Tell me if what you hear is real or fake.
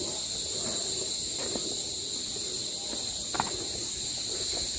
real